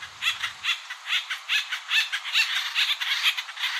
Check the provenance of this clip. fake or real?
fake